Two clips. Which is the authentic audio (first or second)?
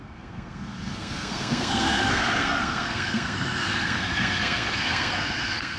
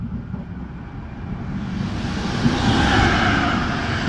second